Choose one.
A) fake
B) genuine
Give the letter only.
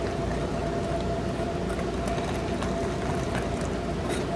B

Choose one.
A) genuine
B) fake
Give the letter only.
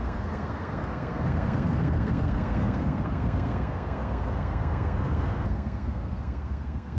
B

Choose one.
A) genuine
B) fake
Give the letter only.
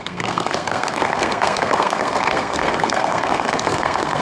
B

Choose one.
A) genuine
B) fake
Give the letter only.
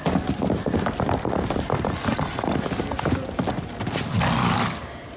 A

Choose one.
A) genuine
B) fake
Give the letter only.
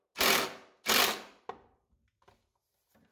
A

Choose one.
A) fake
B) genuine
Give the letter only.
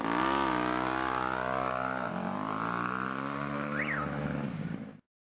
B